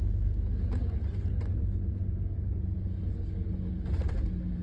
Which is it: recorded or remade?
recorded